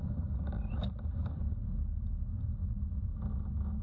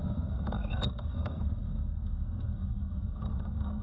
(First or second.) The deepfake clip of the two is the second